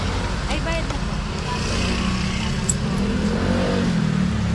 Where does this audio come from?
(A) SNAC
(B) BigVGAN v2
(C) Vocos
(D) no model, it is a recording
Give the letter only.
D